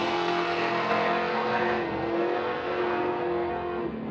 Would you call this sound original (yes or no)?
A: no